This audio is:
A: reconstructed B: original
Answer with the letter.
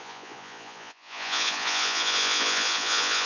A